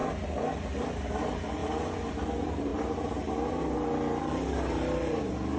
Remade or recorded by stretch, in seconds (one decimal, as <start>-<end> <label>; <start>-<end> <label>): 0.0-0.8 recorded; 0.8-1.6 remade; 1.6-2.1 recorded; 2.1-2.7 remade; 2.7-4.2 recorded; 4.2-5.6 remade